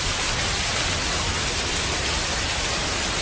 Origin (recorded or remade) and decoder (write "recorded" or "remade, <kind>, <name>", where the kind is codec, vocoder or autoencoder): recorded